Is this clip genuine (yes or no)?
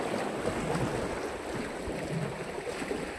yes